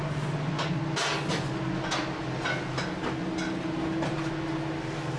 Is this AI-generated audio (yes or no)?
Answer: no